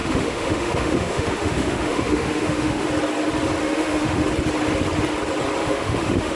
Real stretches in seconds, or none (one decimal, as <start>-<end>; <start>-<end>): 2.9-3.6; 4.3-5.6